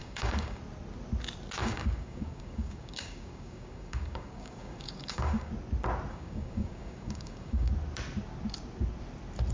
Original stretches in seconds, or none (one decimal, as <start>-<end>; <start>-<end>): 0.6-1.6; 5.5-6.1; 7.7-9.5